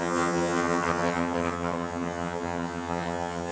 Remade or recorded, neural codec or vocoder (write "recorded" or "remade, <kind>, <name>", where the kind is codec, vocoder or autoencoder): remade, vocoder, HiFi-GAN